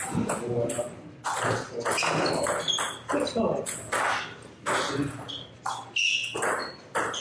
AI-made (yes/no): no